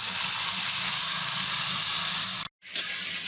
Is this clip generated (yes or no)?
no